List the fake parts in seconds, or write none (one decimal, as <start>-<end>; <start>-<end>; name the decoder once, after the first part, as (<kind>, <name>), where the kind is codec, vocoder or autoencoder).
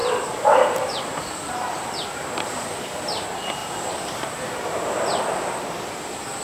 0.0-3.6 (vocoder, BigVGAN v2); 5.9-6.4